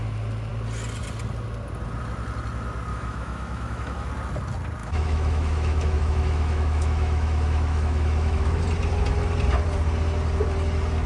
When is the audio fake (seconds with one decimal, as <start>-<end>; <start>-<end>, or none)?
2.9-4.1; 4.8-8.6